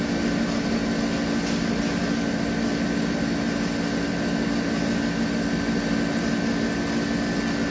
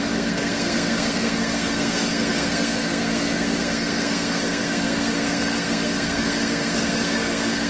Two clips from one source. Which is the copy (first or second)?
second